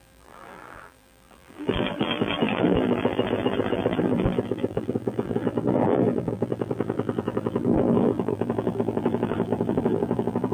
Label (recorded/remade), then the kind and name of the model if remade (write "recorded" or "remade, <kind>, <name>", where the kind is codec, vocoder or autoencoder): remade, vocoder, BigVGAN v2